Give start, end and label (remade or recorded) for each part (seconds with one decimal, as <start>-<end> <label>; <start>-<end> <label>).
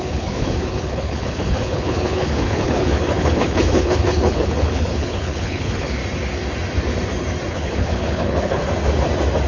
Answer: 0.0-6.0 remade; 6.0-7.5 recorded; 7.5-8.6 remade; 8.6-9.5 recorded